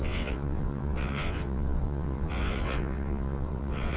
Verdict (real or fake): fake